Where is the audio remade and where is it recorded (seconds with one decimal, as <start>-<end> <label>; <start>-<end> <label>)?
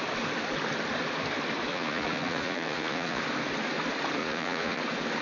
0.0-1.7 recorded; 1.7-3.2 remade; 3.2-4.2 recorded; 4.2-4.8 remade; 4.8-5.2 recorded